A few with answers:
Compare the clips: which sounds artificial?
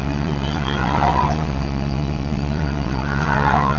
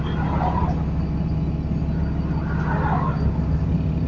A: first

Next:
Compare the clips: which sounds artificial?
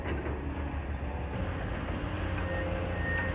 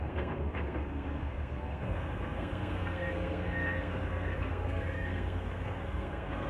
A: second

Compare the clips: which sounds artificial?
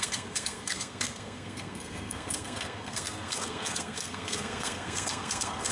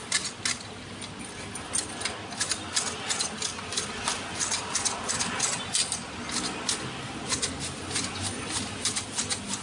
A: first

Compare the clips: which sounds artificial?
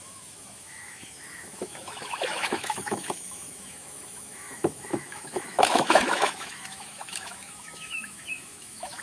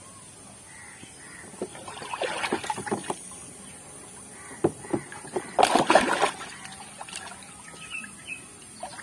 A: first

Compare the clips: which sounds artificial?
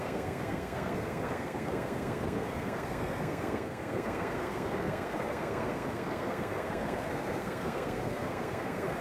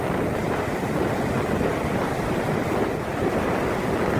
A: first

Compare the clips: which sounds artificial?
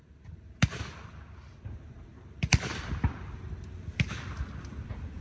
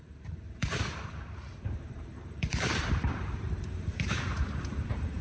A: second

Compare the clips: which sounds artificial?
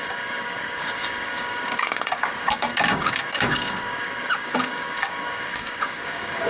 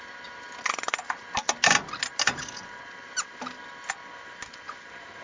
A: first